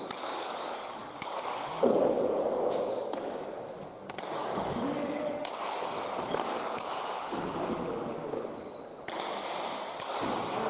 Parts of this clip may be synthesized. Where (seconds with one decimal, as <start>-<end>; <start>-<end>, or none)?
0.0-8.9; 10.0-10.7